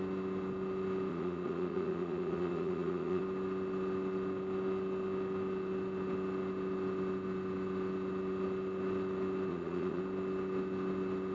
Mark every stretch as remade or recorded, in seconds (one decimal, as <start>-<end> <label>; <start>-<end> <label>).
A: 0.0-1.1 recorded; 1.1-3.2 remade; 3.2-9.5 recorded; 9.5-10.0 remade; 10.0-11.3 recorded